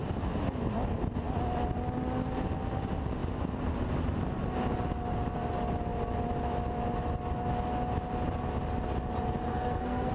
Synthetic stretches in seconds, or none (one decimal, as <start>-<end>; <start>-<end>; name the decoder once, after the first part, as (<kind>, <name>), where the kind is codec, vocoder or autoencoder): 9.5-10.1 (codec, SNAC)